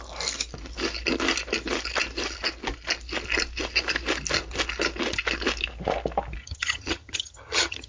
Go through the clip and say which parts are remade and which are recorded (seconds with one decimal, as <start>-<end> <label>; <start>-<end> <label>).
0.0-6.4 recorded; 6.4-7.9 remade